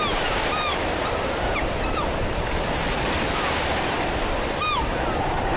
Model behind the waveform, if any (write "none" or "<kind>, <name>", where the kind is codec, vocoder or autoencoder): vocoder, BigVGAN v2